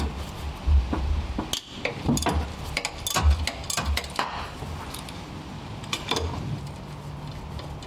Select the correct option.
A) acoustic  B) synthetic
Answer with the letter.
A